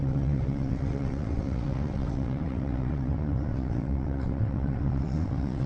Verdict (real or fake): fake